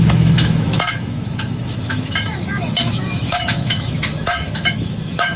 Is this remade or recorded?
remade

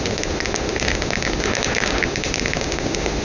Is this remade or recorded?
remade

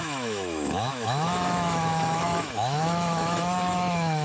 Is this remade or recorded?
remade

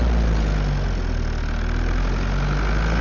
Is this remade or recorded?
recorded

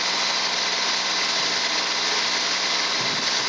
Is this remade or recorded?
recorded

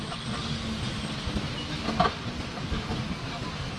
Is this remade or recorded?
recorded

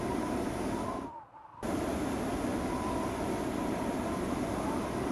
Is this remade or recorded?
recorded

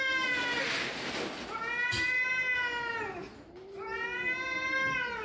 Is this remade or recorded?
recorded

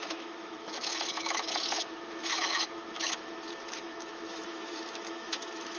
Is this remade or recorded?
remade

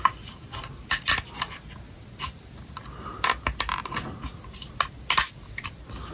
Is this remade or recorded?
recorded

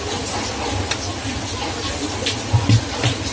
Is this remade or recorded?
recorded